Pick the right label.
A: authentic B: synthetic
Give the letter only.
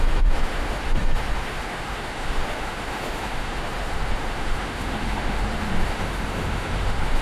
B